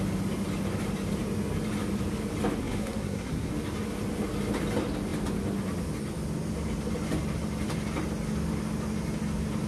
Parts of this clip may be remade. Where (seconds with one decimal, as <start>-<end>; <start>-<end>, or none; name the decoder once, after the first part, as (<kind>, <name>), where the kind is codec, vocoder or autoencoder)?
2.6-3.5 (codec, SNAC)

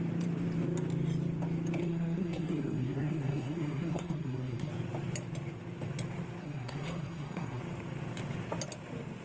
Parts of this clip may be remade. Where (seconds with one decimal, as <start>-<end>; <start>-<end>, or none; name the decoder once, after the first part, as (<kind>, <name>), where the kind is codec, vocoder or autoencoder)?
1.8-4.7 (codec, SNAC); 6.4-7.6

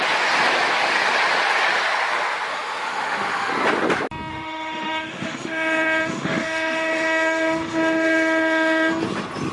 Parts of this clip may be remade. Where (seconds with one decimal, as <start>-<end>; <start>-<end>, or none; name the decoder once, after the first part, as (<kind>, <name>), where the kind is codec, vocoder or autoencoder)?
2.5-3.5 (autoencoder, DAC-VAE); 4.3-8.9

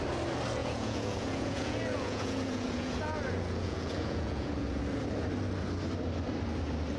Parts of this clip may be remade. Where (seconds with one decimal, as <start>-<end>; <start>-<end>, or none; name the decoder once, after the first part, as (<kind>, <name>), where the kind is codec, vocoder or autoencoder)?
0.6-4.8 (vocoder, Vocos)

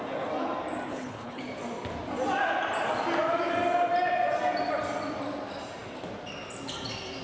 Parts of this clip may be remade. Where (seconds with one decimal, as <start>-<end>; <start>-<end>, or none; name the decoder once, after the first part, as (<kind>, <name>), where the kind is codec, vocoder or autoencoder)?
0.9-1.4 (codec, HILCodec)

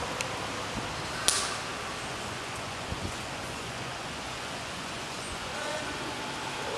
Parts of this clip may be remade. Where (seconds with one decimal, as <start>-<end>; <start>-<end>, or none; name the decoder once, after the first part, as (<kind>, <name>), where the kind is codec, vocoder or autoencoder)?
2.1-6.2 (vocoder, Vocos)

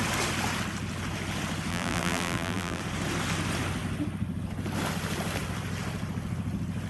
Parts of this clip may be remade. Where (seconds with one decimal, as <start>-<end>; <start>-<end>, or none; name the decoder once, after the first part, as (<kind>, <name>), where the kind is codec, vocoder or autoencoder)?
1.7-2.8 (vocoder, BigVGAN v2)